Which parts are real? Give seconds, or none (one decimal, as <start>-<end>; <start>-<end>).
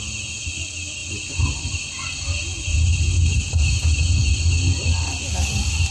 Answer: 0.0-5.9